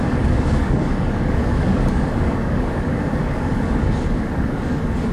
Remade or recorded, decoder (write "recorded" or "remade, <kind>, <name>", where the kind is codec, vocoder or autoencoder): remade, codec, DAC